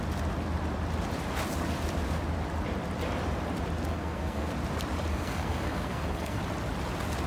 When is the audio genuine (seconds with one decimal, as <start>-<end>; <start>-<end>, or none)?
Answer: 0.0-3.9; 4.5-5.1; 6.4-7.3